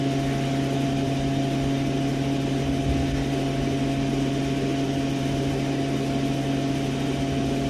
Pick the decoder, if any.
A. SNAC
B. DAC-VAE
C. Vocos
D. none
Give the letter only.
D